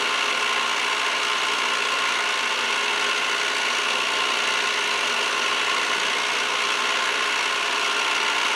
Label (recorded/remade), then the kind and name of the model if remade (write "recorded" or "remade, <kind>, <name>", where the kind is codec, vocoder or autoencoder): recorded